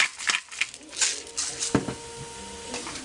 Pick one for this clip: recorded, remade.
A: recorded